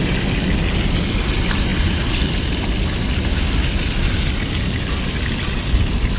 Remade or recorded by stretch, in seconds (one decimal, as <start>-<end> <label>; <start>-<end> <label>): 0.0-6.2 recorded